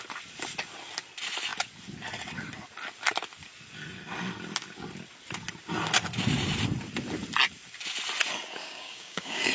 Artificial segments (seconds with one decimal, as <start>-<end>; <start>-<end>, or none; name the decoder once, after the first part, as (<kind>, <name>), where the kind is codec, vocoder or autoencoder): 8.6-9.5 (codec, DAC)